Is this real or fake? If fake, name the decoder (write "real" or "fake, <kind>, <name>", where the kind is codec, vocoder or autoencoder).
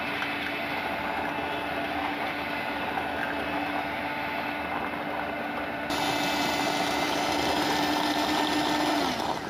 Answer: real